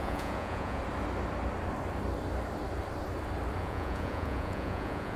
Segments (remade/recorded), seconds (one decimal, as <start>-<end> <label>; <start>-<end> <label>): 0.0-0.8 remade; 0.8-3.6 recorded; 3.6-5.2 remade